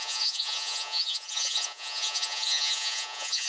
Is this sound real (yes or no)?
no